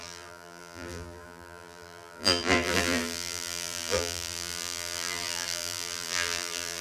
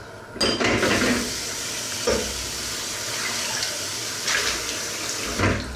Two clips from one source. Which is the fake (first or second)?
first